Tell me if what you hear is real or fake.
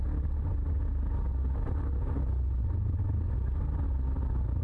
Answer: real